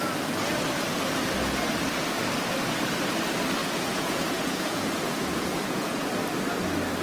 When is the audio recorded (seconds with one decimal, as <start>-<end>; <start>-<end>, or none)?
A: 0.0-3.6; 6.1-7.0